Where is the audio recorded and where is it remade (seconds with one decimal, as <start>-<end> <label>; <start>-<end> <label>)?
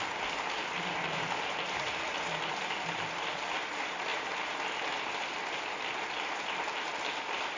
0.0-7.6 recorded